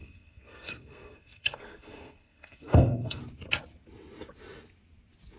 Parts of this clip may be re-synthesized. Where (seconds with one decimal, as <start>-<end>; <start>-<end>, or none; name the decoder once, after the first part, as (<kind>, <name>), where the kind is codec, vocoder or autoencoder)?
0.0-3.2 (codec, SNAC)